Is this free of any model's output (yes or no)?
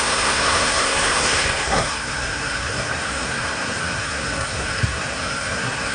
no